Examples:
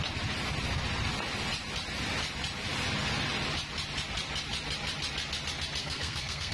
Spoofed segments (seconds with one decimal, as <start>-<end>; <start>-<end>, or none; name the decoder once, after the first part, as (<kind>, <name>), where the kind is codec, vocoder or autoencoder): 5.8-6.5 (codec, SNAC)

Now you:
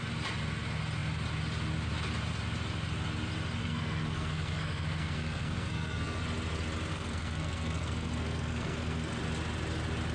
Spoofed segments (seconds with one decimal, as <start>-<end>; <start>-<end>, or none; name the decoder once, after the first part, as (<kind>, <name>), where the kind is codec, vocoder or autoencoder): 3.6-6.2 (codec, SNAC); 6.9-9.2

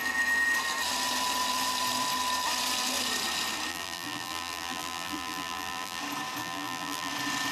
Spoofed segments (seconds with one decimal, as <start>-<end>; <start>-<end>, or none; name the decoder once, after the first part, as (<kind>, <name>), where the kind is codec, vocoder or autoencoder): 3.7-6.0 (vocoder, BigVGAN v2); 6.4-7.1